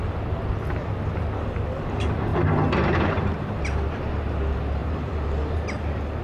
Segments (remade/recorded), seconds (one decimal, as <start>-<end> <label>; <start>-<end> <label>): 0.0-1.3 remade; 1.3-6.2 recorded